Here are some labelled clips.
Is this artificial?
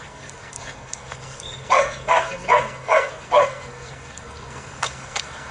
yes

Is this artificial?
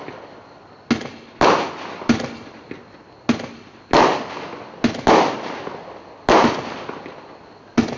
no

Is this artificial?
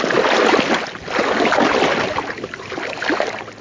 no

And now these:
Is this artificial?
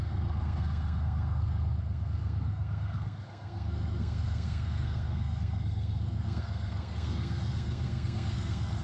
yes